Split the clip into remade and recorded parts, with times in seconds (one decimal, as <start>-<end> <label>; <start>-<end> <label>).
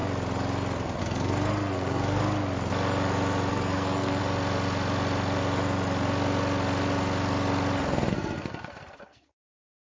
0.0-1.0 recorded; 1.0-2.2 remade; 2.2-3.5 recorded; 3.5-4.2 remade; 4.2-8.1 recorded; 8.1-9.9 remade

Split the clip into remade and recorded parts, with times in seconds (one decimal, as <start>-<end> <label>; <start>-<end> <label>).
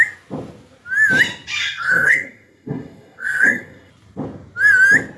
0.0-1.6 recorded; 1.6-3.9 remade; 3.9-5.2 recorded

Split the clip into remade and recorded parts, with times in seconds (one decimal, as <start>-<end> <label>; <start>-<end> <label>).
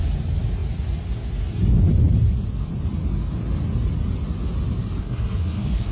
0.0-5.0 recorded; 5.0-5.9 remade